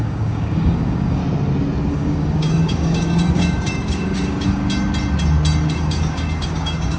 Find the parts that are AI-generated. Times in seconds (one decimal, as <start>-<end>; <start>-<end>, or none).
0.0-1.2; 1.9-4.6; 5.7-7.0